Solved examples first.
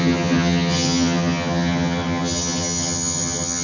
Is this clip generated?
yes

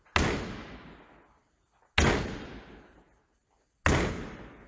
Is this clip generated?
no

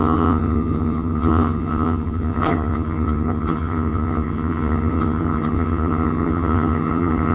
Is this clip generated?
yes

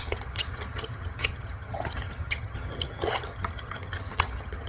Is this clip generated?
yes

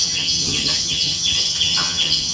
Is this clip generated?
yes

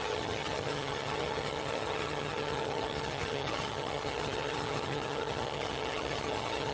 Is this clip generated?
yes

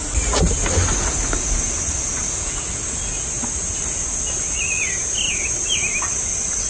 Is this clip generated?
no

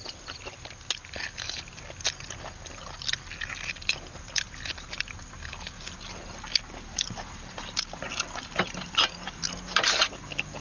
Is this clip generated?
no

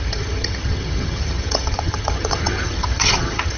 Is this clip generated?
yes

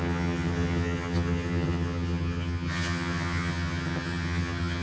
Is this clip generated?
yes